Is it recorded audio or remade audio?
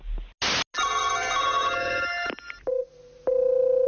recorded